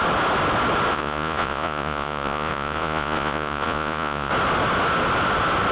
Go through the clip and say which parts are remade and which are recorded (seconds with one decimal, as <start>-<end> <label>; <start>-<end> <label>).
0.0-0.9 recorded; 0.9-4.3 remade; 4.3-5.7 recorded